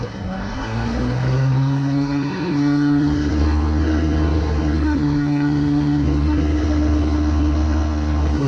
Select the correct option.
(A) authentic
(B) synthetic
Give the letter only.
B